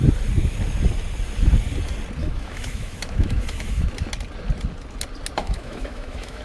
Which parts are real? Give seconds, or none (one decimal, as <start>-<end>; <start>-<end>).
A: 0.0-2.2; 3.9-5.4